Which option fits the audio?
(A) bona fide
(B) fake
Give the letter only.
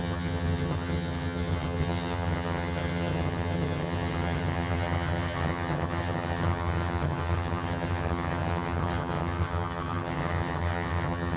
B